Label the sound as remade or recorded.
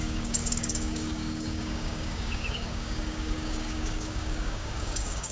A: remade